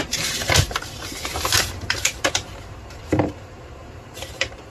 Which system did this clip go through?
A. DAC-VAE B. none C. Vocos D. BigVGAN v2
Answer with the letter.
D